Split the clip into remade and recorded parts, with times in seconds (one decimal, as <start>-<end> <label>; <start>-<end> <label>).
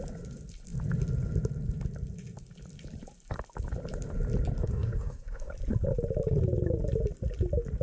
0.0-4.6 recorded; 4.6-5.5 remade; 5.5-7.8 recorded